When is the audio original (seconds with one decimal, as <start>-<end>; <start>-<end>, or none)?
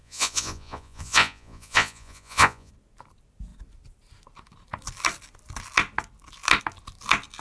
2.7-7.4